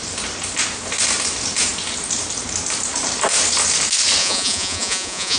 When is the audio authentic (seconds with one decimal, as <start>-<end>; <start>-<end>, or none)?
0.0-4.2